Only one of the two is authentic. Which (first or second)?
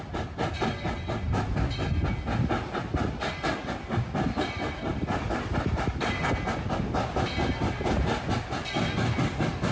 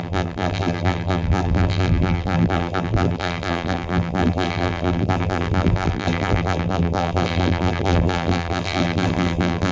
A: first